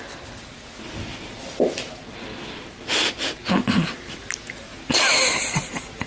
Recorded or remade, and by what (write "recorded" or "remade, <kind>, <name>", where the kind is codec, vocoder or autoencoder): recorded